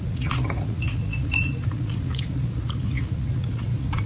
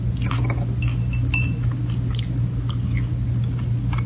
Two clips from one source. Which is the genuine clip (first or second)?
second